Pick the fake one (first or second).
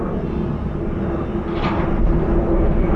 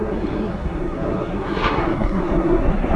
second